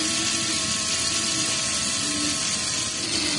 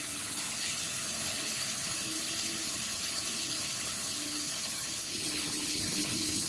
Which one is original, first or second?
first